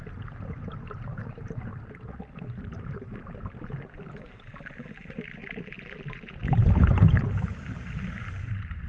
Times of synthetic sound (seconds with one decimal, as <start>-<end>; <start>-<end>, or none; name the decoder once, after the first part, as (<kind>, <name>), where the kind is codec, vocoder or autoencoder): 0.0-1.7 (vocoder, BigVGAN v2); 2.4-5.4; 6.1-8.9